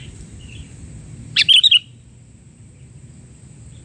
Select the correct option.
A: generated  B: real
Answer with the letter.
A